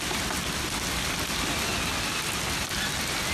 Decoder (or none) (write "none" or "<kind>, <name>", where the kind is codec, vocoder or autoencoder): none